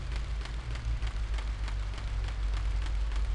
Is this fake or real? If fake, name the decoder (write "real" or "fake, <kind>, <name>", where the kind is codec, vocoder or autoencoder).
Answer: real